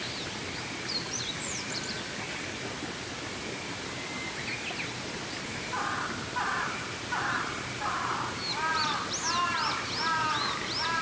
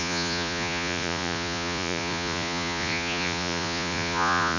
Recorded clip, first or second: first